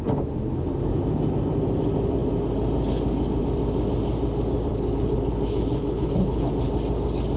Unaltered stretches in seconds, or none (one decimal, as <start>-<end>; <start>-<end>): 0.0-4.7; 6.5-7.4